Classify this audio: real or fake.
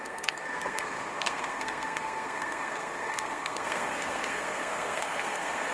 fake